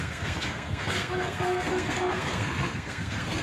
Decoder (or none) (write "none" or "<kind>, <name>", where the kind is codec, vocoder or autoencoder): codec, SNAC